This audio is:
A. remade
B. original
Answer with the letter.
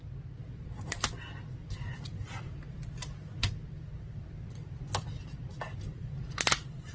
B